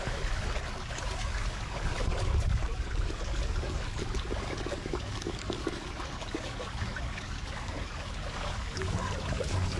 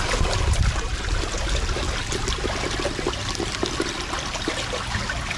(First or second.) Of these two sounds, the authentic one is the second